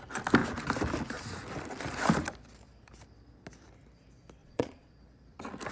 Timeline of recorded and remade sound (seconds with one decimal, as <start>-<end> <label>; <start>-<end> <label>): 0.0-4.4 recorded; 4.4-4.9 remade; 4.9-5.7 recorded